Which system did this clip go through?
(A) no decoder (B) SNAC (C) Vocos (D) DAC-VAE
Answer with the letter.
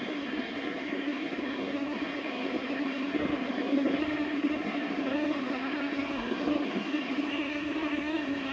B